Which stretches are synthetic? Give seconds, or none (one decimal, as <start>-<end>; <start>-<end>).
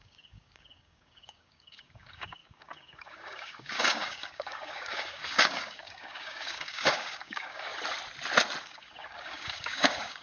0.0-7.7; 8.6-10.2